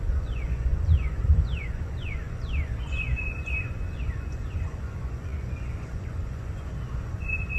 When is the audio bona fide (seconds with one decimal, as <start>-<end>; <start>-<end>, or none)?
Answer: none